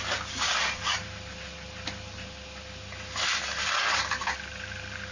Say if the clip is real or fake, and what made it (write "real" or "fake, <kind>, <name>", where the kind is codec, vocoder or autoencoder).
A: real